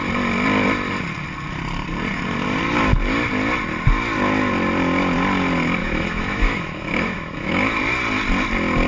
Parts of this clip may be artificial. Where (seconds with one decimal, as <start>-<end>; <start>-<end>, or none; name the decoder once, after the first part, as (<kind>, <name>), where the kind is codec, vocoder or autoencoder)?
5.8-7.8 (autoencoder, DAC-VAE)